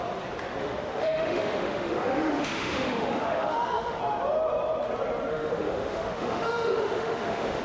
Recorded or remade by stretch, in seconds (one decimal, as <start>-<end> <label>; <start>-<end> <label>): 0.0-0.6 recorded; 0.6-4.0 remade; 4.0-5.3 recorded; 5.3-7.6 remade

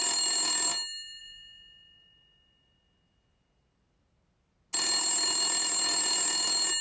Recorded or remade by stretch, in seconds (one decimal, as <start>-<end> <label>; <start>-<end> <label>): 0.0-6.8 recorded

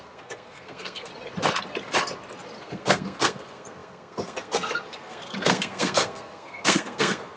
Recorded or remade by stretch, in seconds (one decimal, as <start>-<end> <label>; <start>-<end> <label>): 0.0-1.1 remade; 1.1-2.6 recorded; 2.6-7.4 remade

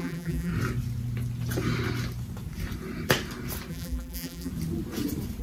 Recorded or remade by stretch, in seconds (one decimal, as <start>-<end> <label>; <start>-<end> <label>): 0.0-0.5 remade; 0.5-3.7 recorded; 3.7-4.5 remade; 4.5-5.4 recorded